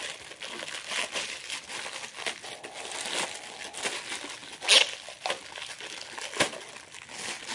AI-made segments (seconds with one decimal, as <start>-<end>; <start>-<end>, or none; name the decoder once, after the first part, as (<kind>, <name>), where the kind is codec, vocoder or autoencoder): none